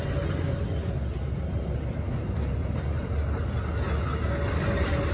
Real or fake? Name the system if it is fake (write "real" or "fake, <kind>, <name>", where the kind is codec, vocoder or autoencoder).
real